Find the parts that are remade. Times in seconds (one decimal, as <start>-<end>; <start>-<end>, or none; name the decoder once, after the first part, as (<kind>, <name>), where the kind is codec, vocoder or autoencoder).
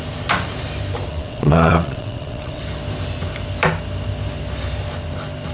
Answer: 1.1-2.6 (vocoder, WaveNeXt)